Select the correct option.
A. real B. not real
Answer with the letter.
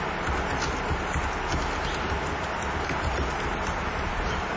A